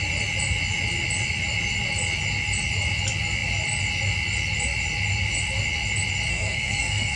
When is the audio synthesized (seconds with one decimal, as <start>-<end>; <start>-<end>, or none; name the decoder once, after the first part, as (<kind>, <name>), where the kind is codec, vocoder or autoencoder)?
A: 6.3-7.2 (codec, SNAC)